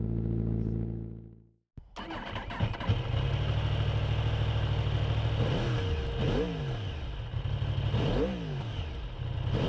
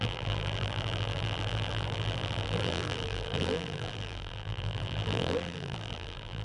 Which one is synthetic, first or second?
second